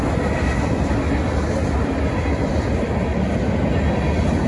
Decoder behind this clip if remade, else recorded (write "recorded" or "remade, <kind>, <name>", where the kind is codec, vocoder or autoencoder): recorded